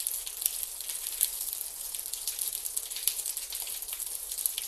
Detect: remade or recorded recorded